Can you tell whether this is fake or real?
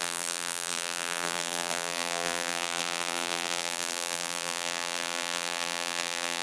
fake